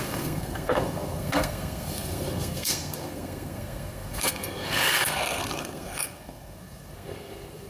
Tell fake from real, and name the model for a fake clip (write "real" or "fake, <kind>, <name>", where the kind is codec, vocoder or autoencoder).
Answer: fake, codec, SNAC